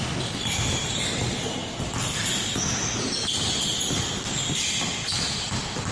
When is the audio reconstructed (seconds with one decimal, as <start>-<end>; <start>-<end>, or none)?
none